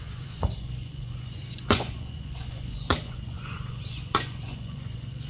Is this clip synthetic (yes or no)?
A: yes